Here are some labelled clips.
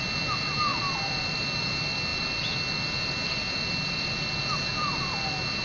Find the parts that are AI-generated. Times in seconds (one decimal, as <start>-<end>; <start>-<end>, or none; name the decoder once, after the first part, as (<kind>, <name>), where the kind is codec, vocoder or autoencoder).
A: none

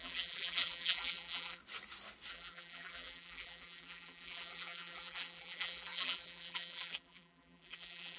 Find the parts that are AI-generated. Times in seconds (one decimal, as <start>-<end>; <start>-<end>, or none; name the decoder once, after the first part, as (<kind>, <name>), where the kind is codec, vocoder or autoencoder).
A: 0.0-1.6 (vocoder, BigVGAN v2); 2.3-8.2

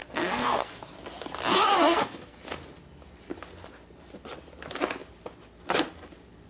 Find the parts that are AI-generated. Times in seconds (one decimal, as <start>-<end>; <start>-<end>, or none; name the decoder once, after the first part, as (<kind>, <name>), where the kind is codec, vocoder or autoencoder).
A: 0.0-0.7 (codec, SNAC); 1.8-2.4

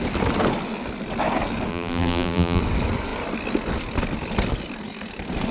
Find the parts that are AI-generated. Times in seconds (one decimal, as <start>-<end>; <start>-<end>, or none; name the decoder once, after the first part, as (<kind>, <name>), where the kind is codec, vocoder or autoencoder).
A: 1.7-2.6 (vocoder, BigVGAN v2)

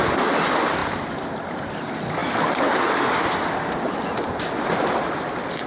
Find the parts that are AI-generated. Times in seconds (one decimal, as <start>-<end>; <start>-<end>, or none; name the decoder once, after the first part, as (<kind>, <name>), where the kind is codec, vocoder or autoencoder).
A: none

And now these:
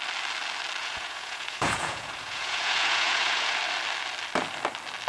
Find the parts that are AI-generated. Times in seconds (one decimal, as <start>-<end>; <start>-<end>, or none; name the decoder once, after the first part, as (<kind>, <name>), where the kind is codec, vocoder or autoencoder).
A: 0.8-3.6 (vocoder, Vocos)